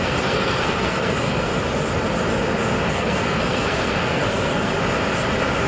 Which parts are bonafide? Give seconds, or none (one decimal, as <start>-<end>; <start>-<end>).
1.5-2.9; 4.7-5.7